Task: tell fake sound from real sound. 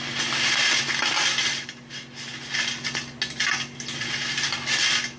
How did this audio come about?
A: real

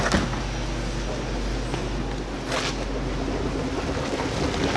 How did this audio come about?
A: real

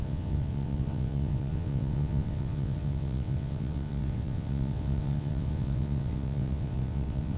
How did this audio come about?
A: fake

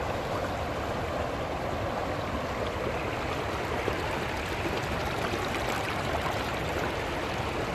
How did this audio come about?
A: real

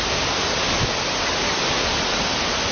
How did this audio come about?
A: real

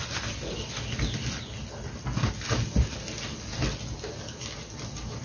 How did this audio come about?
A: real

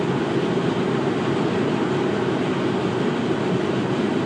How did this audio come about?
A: real